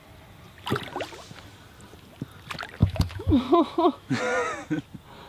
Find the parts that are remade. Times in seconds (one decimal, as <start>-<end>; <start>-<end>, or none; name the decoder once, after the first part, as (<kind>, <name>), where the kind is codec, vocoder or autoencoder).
2.8-4.2 (autoencoder, DAC-VAE)